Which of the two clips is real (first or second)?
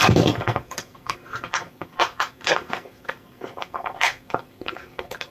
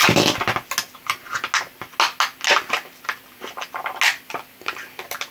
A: second